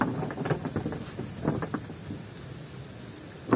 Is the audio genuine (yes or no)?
yes